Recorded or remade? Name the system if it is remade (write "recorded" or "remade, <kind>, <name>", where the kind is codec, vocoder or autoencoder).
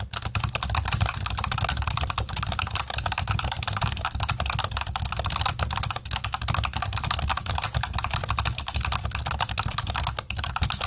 recorded